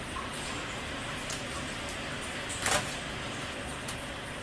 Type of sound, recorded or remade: recorded